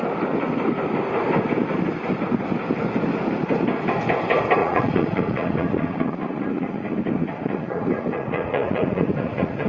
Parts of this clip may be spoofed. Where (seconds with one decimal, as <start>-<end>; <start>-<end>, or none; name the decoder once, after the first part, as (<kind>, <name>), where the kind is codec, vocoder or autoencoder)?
4.6-9.7 (vocoder, Vocos)